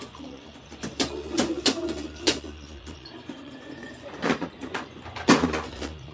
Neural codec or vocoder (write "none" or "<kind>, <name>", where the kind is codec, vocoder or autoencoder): vocoder, Vocos